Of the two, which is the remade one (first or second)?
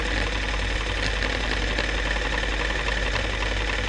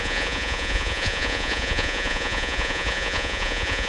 second